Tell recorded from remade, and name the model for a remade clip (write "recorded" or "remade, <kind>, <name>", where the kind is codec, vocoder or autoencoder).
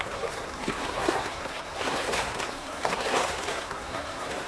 remade, codec, SNAC